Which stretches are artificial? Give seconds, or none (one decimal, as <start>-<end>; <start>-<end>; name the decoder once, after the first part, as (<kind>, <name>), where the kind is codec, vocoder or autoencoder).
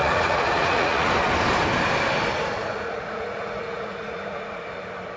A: 0.0-1.1 (vocoder, Vocos); 2.7-4.7